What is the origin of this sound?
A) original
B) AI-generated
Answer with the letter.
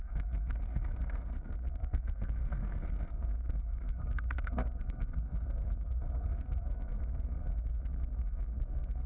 B